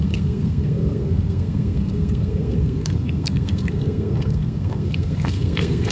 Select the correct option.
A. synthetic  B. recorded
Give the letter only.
A